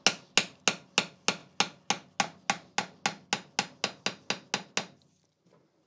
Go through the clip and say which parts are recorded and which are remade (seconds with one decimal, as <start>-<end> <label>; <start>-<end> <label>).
0.0-5.9 recorded